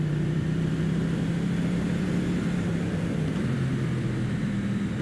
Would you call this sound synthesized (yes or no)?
yes